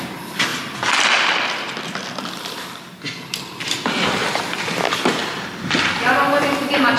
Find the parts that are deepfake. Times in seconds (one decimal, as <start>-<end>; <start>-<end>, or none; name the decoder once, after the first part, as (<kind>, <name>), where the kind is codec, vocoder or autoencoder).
0.5-4.3 (vocoder, BigVGAN v2)